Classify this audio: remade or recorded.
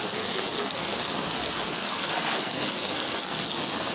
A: remade